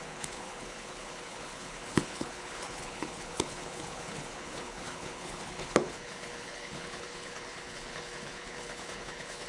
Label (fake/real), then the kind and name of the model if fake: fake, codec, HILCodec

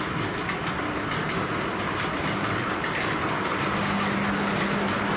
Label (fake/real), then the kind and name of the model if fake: real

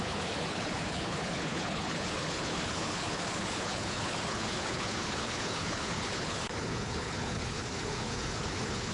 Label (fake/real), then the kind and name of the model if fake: fake, codec, HILCodec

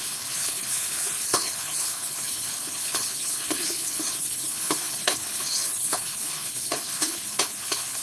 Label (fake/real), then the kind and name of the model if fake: fake, codec, HILCodec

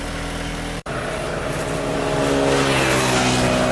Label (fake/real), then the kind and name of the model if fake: real